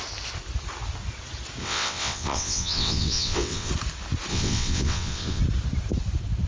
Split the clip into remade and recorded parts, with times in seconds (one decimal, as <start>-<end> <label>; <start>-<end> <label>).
0.0-1.6 recorded; 1.6-3.7 remade; 3.7-4.3 recorded; 4.3-5.4 remade; 5.4-6.5 recorded